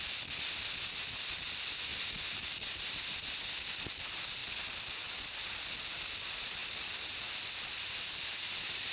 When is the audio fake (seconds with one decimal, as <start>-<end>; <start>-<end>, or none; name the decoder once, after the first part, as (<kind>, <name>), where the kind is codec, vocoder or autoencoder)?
none